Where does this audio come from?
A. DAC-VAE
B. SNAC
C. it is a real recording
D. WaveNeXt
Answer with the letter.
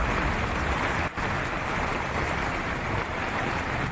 C